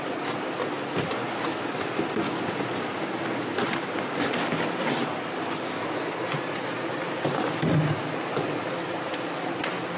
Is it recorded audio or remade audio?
recorded